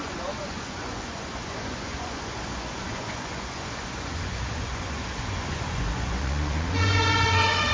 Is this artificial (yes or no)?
yes